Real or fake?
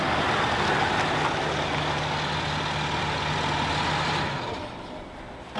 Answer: real